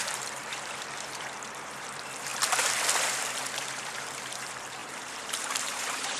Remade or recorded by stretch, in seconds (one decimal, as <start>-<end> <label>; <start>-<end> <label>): 0.0-2.3 remade; 2.3-3.6 recorded; 3.6-6.2 remade